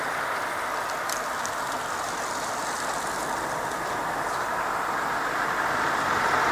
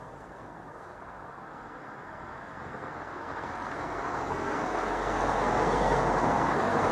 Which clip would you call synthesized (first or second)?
second